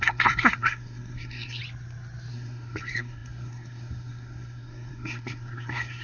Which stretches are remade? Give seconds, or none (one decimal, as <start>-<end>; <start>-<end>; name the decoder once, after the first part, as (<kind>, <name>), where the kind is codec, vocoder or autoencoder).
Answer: 0.0-1.6 (codec, SNAC); 2.3-6.0